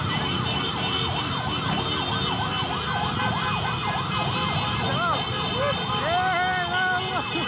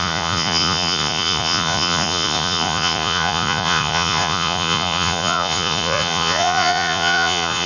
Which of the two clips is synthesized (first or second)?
second